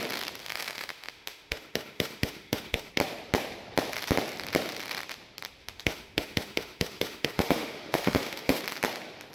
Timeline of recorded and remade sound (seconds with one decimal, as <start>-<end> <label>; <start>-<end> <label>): 0.0-0.4 recorded; 0.4-2.9 remade; 2.9-5.6 recorded; 5.6-8.6 remade; 8.6-9.3 recorded